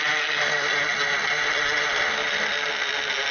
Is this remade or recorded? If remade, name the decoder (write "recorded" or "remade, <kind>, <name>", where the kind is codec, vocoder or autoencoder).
recorded